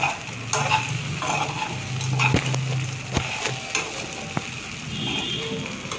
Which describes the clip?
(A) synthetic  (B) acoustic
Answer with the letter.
B